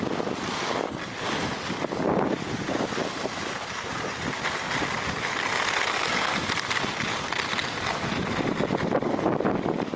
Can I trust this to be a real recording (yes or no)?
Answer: yes